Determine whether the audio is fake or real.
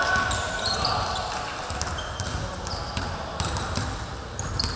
real